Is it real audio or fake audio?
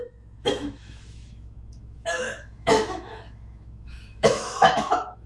fake